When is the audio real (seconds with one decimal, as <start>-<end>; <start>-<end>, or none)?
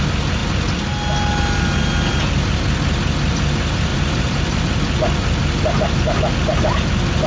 0.0-3.9; 4.6-7.3